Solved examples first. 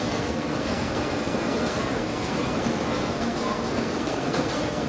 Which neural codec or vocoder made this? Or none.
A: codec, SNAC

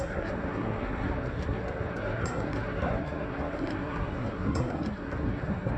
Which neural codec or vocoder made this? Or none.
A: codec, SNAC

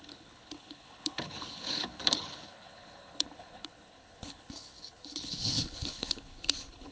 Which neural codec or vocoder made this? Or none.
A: codec, HILCodec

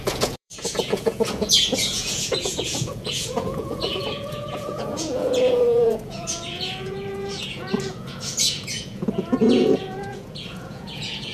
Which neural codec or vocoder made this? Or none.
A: vocoder, Vocos